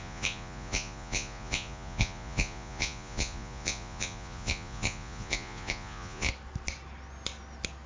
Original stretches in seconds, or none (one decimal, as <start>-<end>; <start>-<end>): 6.3-7.9